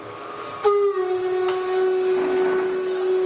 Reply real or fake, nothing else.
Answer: real